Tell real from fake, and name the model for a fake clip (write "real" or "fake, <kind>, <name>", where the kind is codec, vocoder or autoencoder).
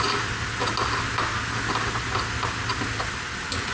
real